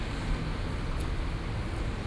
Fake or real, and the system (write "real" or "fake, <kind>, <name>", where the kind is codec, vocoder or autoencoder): real